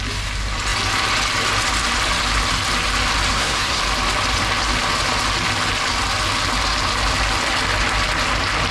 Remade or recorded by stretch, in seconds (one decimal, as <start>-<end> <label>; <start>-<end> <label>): 0.0-3.3 recorded; 3.3-3.8 remade; 3.8-8.7 recorded